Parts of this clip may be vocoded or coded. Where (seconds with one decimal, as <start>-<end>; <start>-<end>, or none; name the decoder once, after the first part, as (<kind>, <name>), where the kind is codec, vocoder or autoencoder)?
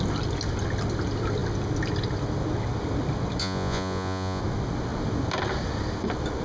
3.4-4.4 (vocoder, Vocos)